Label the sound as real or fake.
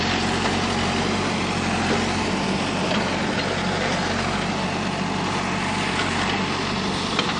real